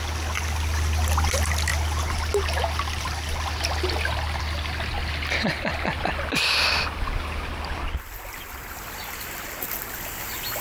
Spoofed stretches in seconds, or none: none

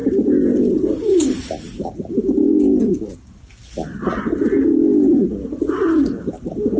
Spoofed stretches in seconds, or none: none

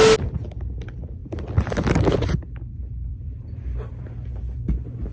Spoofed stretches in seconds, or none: 3.1-3.9 (vocoder, BigVGAN v2)

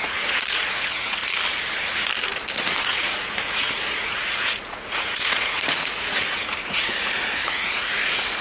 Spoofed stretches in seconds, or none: 0.0-1.2 (vocoder, Vocos); 2.8-8.4

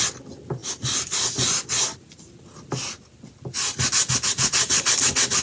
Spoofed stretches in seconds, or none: none

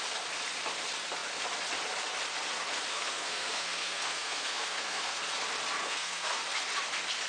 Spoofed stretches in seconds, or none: 2.9-5.2 (codec, SNAC); 5.8-6.4